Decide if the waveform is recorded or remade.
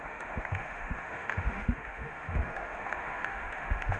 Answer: remade